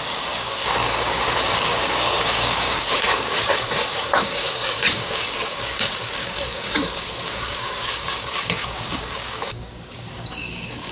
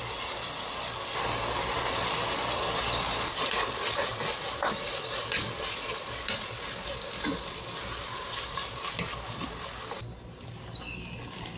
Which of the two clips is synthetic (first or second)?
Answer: first